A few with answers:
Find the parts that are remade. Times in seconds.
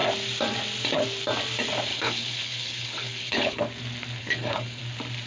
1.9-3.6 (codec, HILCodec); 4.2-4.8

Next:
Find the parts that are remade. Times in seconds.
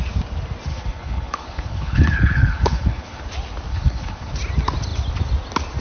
0.7-3.2 (codec, HILCodec); 3.7-4.3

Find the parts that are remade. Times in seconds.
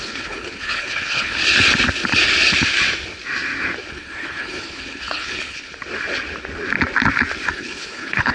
0.0-1.4 (codec, HILCodec); 3.9-5.7; 7.5-8.3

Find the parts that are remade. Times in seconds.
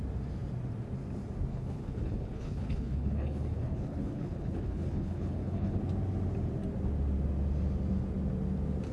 1.5-5.8 (codec, HILCodec)